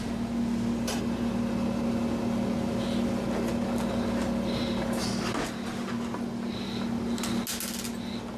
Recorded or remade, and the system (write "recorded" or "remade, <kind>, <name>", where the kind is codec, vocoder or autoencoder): recorded